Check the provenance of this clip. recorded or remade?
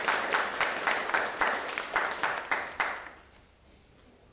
recorded